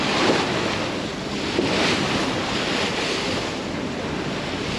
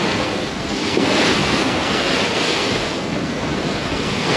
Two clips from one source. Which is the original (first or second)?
first